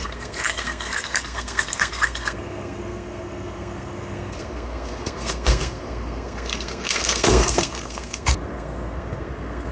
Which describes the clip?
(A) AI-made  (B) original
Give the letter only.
A